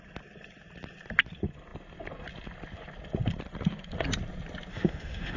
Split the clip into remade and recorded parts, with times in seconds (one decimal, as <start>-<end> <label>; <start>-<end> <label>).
0.0-4.7 recorded; 4.7-5.4 remade